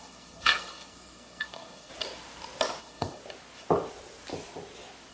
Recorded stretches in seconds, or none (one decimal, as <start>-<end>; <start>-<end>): 1.9-2.8; 3.2-5.1